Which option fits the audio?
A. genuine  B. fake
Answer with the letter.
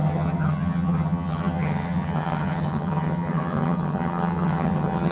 B